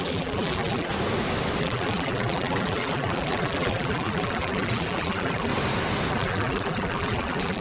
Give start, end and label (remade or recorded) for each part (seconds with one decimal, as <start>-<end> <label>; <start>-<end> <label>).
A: 0.0-0.9 remade; 0.9-1.6 recorded; 1.6-5.5 remade; 5.5-6.1 recorded; 6.1-7.6 remade